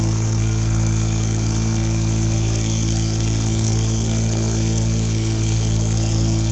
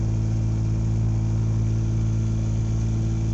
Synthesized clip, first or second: first